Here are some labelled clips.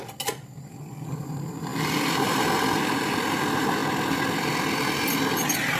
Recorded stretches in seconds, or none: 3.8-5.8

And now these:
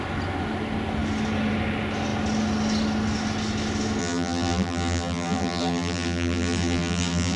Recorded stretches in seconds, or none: 0.0-4.0

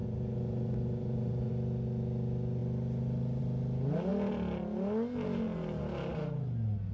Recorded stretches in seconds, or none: 1.5-6.9

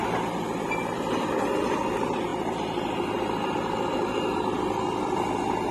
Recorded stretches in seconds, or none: none

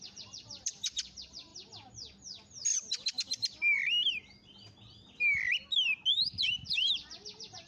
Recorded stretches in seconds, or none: 1.5-6.1

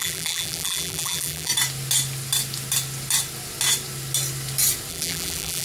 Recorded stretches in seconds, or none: 1.5-4.9

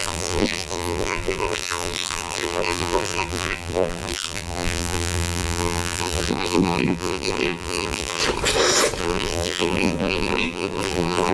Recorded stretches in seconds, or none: 8.2-9.0

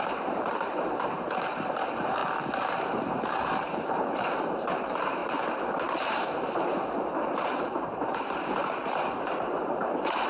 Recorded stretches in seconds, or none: 2.2-3.2; 8.8-9.6